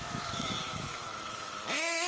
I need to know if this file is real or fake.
fake